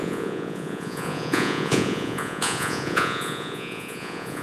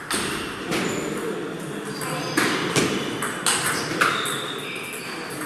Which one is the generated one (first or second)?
first